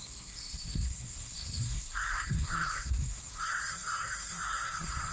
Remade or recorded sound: remade